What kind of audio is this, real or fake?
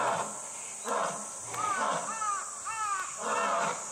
real